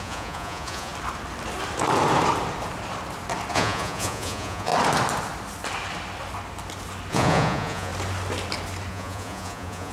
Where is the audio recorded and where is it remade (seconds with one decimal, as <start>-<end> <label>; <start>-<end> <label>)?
0.0-0.9 remade; 0.9-3.5 recorded; 3.5-4.7 remade; 4.7-7.1 recorded; 7.1-7.9 remade; 7.9-8.9 recorded; 8.9-9.9 remade